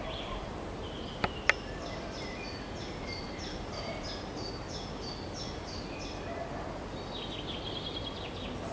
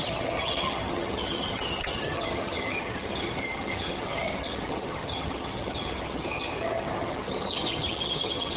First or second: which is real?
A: first